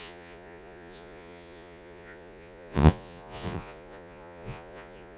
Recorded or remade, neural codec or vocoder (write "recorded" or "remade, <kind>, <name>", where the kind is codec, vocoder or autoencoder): remade, vocoder, Vocos